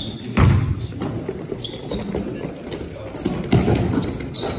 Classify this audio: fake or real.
real